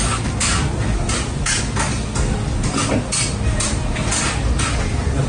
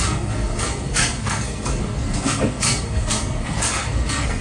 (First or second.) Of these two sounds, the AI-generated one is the second